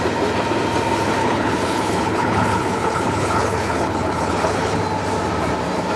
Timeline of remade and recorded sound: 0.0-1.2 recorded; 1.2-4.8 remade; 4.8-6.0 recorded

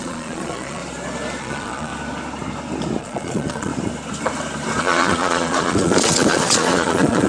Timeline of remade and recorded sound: 0.0-0.8 remade; 0.8-1.4 recorded; 1.4-1.9 remade; 1.9-3.0 recorded; 3.0-3.7 remade; 3.7-4.8 recorded; 4.8-7.3 remade

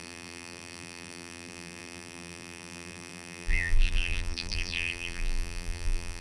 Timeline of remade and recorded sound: 0.0-6.2 remade